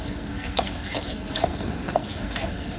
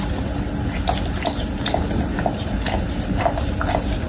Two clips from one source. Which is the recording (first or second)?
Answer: second